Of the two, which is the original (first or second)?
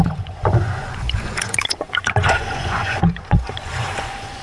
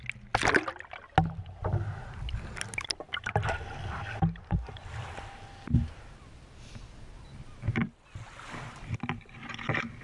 second